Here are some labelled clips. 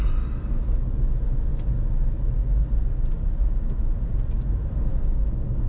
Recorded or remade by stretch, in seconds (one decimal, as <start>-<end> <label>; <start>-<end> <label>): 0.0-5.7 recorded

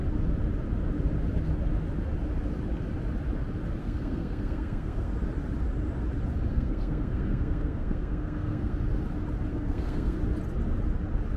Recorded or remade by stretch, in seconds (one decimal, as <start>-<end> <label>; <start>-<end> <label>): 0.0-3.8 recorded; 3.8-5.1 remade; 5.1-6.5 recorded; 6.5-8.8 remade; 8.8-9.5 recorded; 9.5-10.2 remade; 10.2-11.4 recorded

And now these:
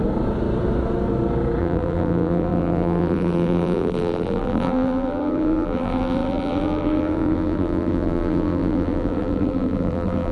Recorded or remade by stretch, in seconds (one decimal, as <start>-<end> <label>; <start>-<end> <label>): 0.0-1.6 recorded; 1.6-10.3 remade

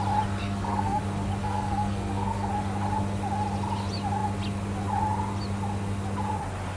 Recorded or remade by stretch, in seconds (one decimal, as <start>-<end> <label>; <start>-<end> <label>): 0.0-0.4 recorded; 0.4-1.0 remade; 1.0-1.4 recorded; 1.4-2.5 remade; 2.5-6.8 recorded

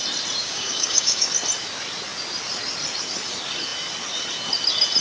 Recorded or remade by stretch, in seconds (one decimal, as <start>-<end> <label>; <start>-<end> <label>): 0.0-0.4 recorded; 0.4-1.3 remade; 1.3-5.0 recorded